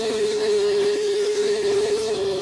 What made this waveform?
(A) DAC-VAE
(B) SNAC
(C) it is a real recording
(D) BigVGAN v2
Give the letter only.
B